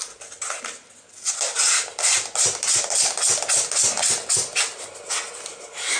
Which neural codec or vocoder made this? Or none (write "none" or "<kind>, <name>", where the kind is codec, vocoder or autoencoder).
none